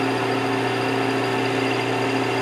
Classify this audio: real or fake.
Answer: real